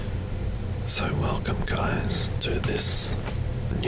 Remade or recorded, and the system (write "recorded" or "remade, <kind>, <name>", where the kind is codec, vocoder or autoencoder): recorded